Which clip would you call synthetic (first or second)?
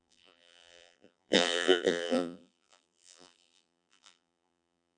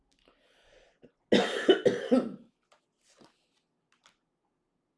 first